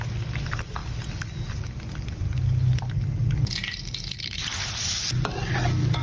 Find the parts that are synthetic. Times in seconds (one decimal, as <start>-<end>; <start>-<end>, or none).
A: none